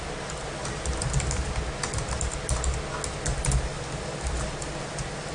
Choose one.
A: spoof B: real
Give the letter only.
B